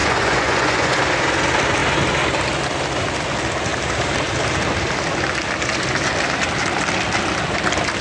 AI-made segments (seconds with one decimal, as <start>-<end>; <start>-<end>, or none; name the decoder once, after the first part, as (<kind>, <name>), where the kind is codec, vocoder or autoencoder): 0.0-1.0 (vocoder, Vocos)